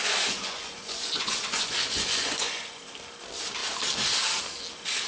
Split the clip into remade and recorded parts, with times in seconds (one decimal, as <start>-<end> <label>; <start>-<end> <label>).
0.0-2.8 remade; 2.8-5.1 recorded